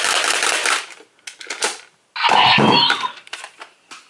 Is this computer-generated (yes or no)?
no